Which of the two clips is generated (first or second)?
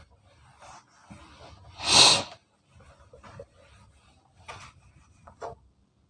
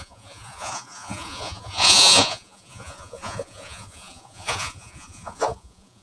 second